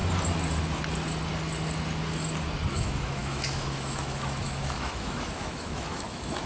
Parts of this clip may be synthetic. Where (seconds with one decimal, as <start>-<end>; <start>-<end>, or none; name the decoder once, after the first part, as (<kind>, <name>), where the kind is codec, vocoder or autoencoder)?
2.7-6.5 (autoencoder, DAC-VAE)